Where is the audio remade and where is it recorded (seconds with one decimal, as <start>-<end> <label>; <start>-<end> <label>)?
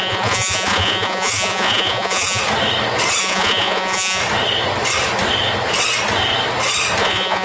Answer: 0.0-2.4 remade; 2.4-3.2 recorded; 3.2-4.2 remade; 4.2-7.0 recorded; 7.0-7.4 remade